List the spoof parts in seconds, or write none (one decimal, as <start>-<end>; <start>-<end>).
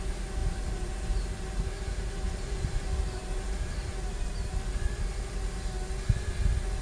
0.4-4.5